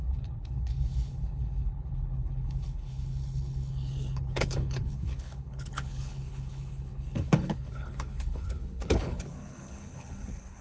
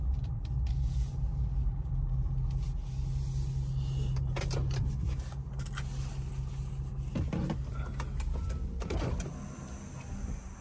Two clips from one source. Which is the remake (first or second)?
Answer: first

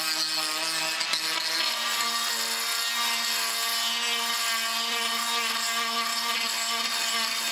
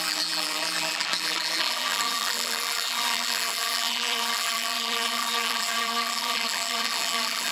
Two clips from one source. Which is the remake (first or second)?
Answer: second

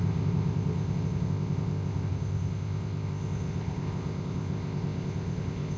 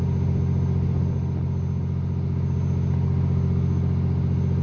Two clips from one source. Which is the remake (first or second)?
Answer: first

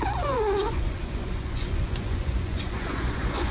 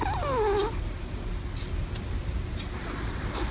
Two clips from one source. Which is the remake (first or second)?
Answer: first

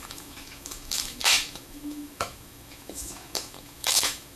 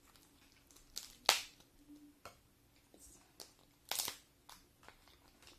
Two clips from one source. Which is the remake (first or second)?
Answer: first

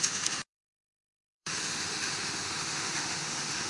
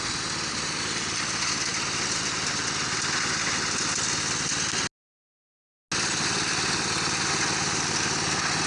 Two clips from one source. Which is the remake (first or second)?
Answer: first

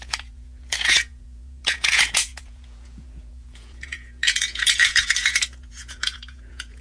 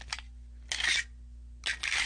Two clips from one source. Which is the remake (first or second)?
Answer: first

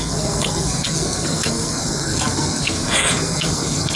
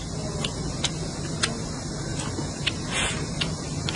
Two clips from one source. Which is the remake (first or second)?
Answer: first